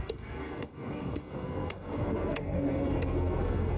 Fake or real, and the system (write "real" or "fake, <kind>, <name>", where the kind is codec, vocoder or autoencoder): fake, codec, SNAC